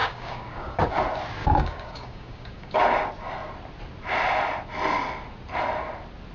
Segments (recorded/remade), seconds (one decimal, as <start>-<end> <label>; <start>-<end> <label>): 0.0-0.9 remade; 0.9-1.4 recorded; 1.4-2.8 remade; 2.8-6.3 recorded